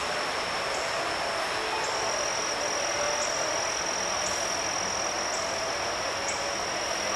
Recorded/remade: recorded